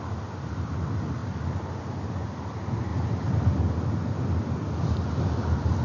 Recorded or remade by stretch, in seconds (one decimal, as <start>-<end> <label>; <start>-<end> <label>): 0.0-5.8 recorded